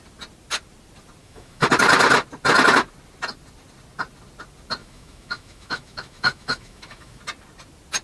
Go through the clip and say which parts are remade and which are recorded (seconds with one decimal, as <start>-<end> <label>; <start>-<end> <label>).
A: 0.0-1.2 recorded; 1.2-1.7 remade; 1.7-4.8 recorded; 4.8-7.2 remade; 7.2-8.0 recorded